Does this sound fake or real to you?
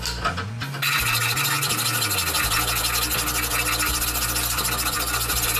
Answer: real